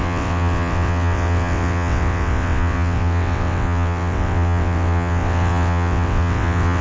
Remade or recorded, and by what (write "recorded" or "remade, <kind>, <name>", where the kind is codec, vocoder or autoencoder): remade, vocoder, WaveNeXt